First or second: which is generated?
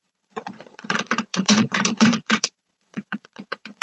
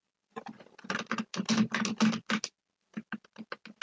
first